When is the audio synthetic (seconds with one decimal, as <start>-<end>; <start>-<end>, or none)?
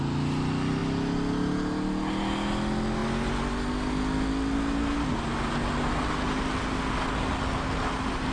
none